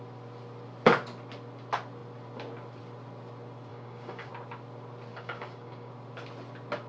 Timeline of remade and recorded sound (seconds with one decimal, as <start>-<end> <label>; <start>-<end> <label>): 0.0-3.7 recorded; 3.7-4.3 remade; 4.3-5.1 recorded; 5.1-5.9 remade; 5.9-6.9 recorded